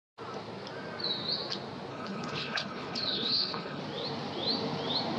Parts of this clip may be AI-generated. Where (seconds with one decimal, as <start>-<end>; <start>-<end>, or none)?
1.9-3.8